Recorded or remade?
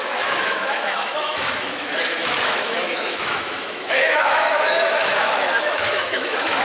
remade